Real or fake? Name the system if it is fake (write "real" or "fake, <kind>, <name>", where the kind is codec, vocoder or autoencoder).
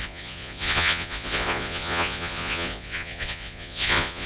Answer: fake, vocoder, Vocos